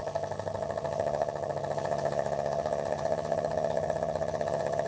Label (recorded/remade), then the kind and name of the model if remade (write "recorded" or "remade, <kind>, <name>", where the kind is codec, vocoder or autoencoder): remade, vocoder, HiFi-GAN